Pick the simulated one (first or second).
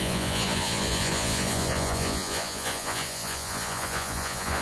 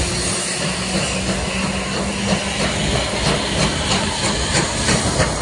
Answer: first